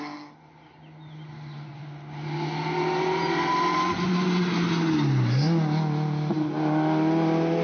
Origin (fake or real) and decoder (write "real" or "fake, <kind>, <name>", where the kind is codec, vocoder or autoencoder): real